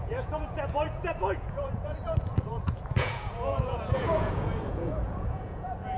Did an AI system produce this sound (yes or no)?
yes